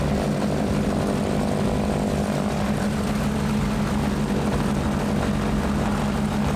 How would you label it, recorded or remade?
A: recorded